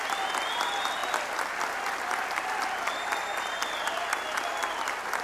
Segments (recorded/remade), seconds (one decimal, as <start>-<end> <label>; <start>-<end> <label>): 0.0-5.2 recorded